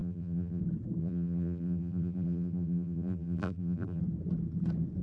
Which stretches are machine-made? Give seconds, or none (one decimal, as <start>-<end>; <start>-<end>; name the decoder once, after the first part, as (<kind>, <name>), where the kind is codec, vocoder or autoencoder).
0.0-0.6 (vocoder, BigVGAN v2); 1.0-4.0